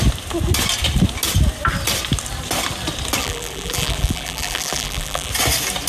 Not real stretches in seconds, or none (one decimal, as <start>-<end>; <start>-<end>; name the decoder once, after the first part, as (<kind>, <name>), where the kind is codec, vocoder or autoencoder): 3.2-5.3 (vocoder, BigVGAN v2)